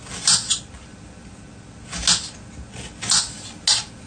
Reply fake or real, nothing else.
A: real